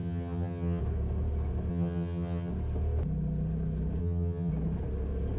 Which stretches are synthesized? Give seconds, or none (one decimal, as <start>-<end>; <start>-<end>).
0.0-0.8; 1.7-2.5; 4.0-4.5